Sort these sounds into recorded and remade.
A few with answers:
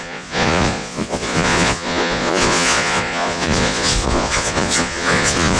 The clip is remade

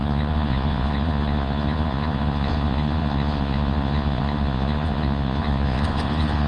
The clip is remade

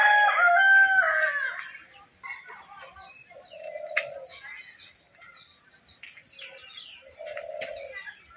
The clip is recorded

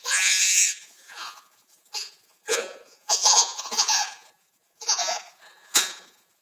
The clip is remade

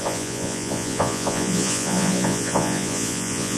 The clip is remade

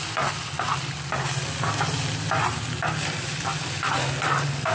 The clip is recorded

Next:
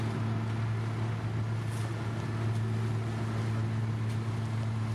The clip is recorded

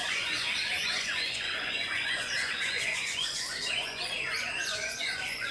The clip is remade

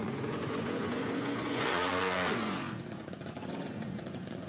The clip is remade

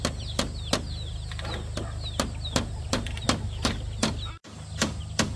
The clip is recorded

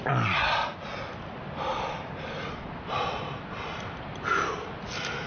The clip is recorded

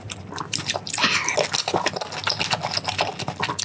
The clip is recorded